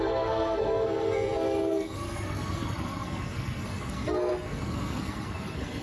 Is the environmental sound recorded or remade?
remade